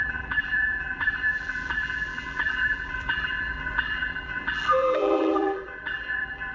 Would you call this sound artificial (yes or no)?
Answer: yes